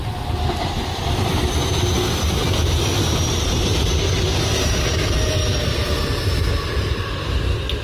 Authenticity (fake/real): real